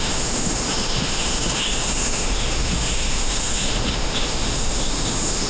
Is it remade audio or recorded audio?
remade